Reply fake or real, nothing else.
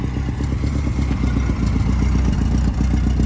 real